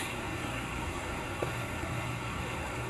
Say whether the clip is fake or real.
fake